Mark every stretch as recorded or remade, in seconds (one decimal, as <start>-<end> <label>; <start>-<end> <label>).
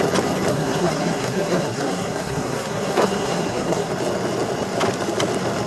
0.0-0.5 recorded; 0.5-3.9 remade; 3.9-5.7 recorded